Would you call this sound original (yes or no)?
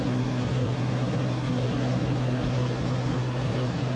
no